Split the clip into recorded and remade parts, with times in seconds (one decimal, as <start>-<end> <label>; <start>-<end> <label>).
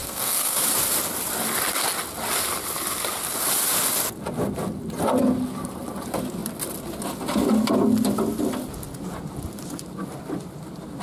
0.0-0.6 remade; 0.6-11.0 recorded